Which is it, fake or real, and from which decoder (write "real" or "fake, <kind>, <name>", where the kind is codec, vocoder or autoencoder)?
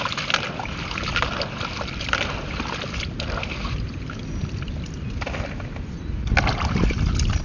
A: real